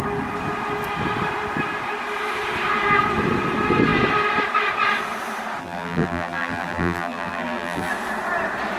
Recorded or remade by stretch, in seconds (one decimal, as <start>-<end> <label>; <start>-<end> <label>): 0.0-5.6 recorded; 5.6-7.9 remade; 7.9-8.8 recorded